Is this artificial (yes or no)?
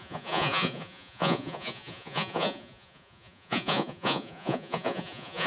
yes